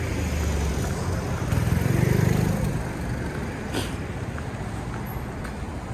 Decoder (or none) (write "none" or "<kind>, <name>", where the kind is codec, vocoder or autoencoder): none